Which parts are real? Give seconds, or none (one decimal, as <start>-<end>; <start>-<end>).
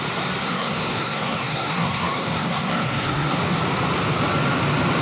0.0-0.4; 3.4-5.0